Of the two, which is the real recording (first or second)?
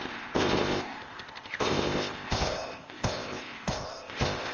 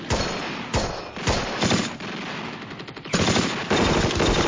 second